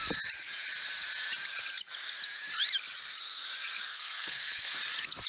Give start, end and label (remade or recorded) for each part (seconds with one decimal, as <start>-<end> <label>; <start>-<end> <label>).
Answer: 0.0-3.9 recorded; 3.9-4.7 remade; 4.7-5.3 recorded